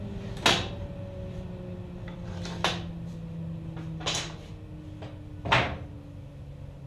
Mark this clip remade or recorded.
recorded